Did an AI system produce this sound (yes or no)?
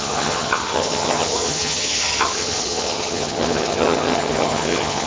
yes